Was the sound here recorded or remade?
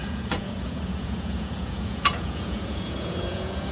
remade